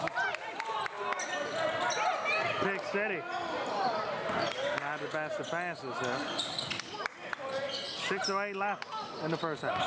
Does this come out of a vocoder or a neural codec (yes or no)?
no